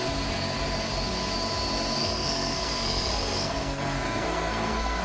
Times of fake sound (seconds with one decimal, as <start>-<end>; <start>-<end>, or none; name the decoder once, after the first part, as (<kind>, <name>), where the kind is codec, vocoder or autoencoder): 2.0-5.0 (codec, SNAC)